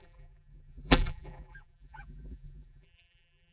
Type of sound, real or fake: fake